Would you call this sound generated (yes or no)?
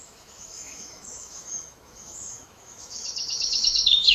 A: yes